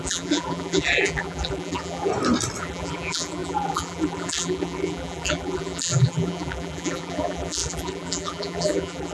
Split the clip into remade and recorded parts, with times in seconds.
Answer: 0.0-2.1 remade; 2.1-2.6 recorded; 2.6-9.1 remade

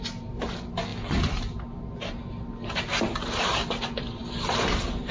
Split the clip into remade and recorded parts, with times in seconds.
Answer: 0.0-4.2 recorded; 4.2-5.1 remade

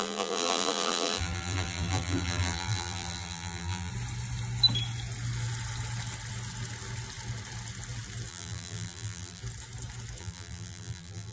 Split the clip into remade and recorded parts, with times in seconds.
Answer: 0.0-3.9 remade; 3.9-8.3 recorded; 8.3-9.4 remade; 9.4-10.2 recorded; 10.2-11.3 remade

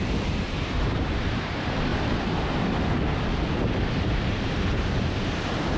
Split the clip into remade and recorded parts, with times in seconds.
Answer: 0.0-1.9 remade; 1.9-3.9 recorded; 3.9-5.8 remade

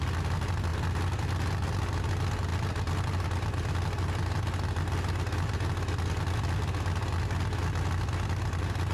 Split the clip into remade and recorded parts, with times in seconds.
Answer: 0.0-8.9 recorded

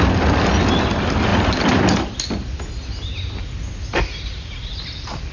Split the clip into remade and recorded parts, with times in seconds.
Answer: 0.0-1.3 remade; 1.3-4.5 recorded; 4.5-5.3 remade

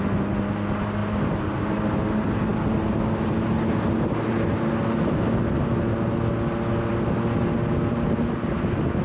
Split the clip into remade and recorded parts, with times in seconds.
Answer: 0.0-1.0 recorded; 1.0-1.7 remade; 1.7-9.0 recorded